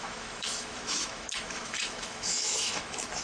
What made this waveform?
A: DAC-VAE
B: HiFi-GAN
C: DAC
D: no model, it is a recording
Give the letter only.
A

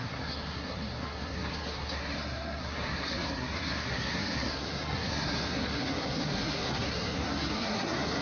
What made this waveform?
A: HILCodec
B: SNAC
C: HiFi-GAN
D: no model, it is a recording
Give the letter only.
B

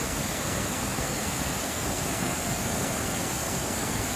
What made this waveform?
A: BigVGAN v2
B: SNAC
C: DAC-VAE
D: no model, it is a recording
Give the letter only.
B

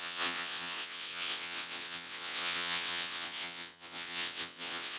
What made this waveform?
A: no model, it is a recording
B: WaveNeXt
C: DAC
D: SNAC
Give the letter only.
B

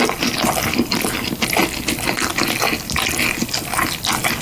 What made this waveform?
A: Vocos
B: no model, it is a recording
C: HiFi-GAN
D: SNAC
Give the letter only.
B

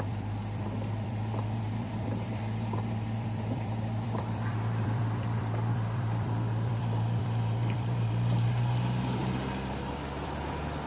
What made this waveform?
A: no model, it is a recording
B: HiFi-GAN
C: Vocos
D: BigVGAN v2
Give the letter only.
D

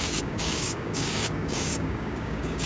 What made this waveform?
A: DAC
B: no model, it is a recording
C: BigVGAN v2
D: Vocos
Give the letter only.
A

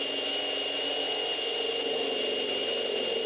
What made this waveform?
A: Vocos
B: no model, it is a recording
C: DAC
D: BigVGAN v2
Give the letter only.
B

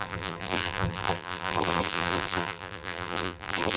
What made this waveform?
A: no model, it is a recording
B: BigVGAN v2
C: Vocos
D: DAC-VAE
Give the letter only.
B